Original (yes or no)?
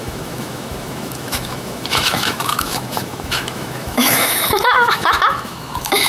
no